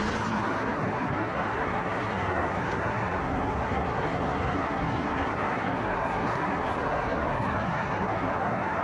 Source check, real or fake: fake